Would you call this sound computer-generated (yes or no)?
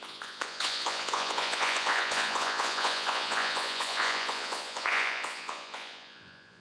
yes